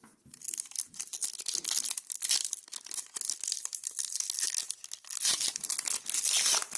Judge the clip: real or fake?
real